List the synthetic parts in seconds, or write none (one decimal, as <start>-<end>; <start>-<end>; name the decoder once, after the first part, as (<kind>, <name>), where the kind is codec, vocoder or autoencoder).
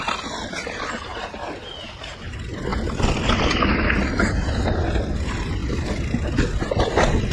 none